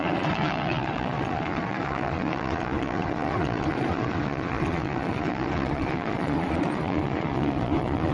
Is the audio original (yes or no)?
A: no